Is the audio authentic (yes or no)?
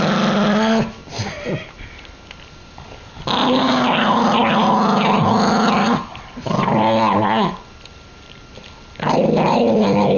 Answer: yes